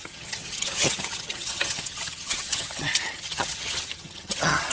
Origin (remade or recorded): remade